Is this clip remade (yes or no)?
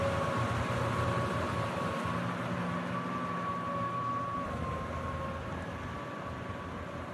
no